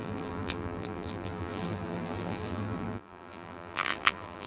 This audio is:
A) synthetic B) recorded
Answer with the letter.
A